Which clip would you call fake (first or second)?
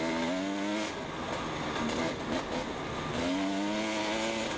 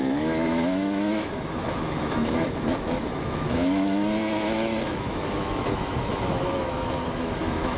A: second